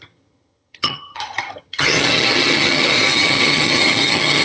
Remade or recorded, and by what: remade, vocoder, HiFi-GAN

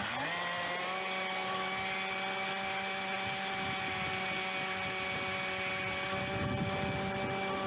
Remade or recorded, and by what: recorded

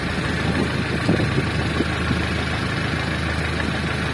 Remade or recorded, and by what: recorded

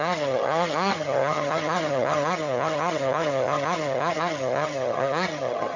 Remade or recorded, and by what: remade, vocoder, HiFi-GAN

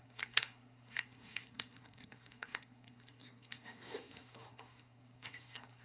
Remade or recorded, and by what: remade, codec, SNAC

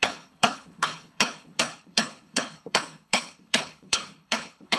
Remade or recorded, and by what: remade, codec, HILCodec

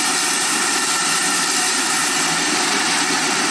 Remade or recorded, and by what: remade, vocoder, BigVGAN v2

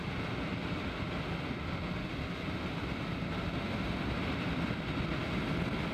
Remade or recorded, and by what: recorded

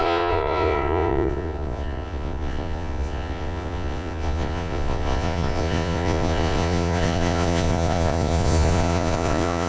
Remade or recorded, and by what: remade, vocoder, Vocos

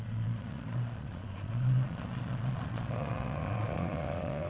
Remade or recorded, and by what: remade, vocoder, Vocos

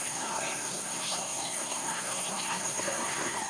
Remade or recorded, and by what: remade, codec, SNAC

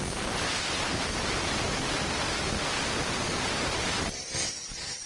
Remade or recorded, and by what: remade, vocoder, BigVGAN v2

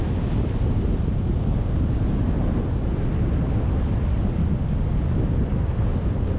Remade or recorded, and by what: recorded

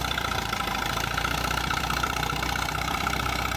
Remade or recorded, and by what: remade, vocoder, BigVGAN v2